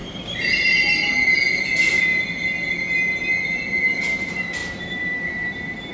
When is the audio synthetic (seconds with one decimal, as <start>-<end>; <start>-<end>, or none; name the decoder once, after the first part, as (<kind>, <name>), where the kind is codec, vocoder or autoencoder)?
0.0-0.8 (vocoder, BigVGAN v2); 4.6-5.9